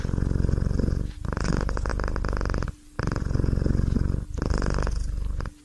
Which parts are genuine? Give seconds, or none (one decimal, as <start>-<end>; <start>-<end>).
0.0-5.6